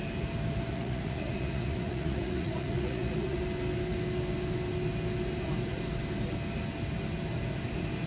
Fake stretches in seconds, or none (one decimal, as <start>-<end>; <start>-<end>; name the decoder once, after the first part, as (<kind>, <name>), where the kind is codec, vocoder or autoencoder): 0.7-3.4 (vocoder, Vocos)